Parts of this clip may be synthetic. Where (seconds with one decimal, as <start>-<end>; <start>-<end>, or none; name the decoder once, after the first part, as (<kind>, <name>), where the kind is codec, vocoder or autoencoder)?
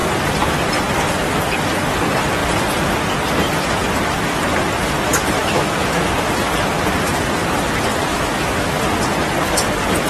5.4-6.0 (autoencoder, DAC-VAE); 8.1-8.8